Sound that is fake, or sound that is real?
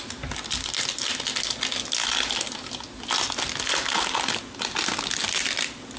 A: real